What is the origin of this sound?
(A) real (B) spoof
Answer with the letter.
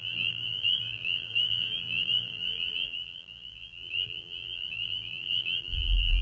B